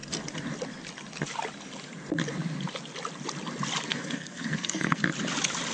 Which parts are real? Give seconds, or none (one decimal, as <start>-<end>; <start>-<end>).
0.0-3.9; 5.0-5.7